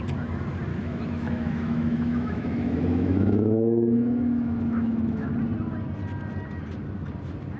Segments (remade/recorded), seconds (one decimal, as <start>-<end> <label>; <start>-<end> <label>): 0.0-0.7 recorded; 0.7-5.3 remade; 5.3-7.6 recorded